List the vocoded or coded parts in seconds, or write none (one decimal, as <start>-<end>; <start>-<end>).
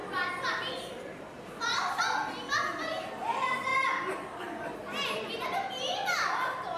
0.0-2.0; 3.7-6.8